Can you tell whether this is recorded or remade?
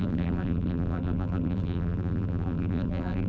remade